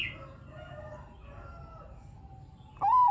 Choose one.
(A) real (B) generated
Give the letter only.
A